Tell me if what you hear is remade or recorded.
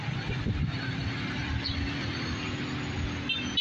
recorded